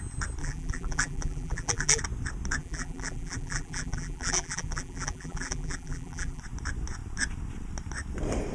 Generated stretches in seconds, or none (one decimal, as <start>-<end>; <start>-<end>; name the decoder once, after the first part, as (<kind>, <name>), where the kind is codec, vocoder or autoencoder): 0.4-2.0 (vocoder, BigVGAN v2); 2.6-6.4

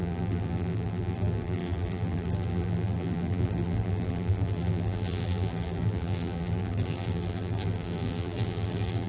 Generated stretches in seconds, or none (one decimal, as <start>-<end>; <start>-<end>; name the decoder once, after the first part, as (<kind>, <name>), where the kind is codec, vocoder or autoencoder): 0.0-9.1 (vocoder, BigVGAN v2)

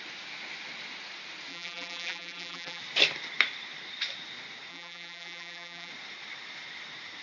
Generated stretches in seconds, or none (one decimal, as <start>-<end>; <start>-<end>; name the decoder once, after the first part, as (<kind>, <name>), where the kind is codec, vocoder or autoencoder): 1.5-2.8 (vocoder, BigVGAN v2); 4.7-5.9

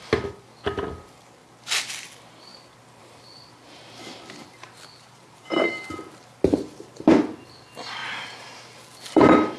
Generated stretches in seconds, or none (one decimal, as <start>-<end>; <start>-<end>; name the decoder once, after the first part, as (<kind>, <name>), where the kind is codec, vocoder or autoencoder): 2.5-7.2 (vocoder, BigVGAN v2); 8.0-9.6

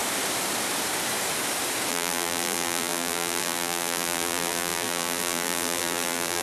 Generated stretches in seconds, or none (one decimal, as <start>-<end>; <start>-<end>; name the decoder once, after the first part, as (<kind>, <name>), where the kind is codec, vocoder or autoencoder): 1.9-6.4 (vocoder, BigVGAN v2)

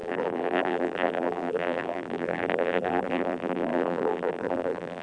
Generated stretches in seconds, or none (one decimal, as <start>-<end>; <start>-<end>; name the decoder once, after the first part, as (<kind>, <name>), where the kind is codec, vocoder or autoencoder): 0.0-5.0 (vocoder, BigVGAN v2)